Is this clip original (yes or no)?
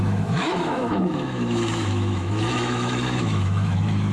no